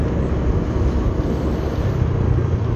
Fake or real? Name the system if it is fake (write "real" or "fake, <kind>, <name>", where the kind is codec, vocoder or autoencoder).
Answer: real